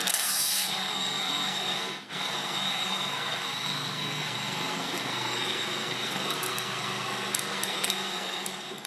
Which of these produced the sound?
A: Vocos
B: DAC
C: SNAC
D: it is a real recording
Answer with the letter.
C